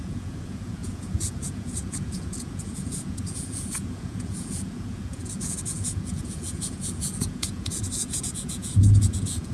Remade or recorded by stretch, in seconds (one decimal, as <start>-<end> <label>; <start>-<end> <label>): 0.0-9.5 remade